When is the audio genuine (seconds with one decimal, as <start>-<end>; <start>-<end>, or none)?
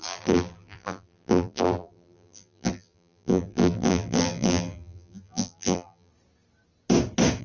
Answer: 6.1-7.4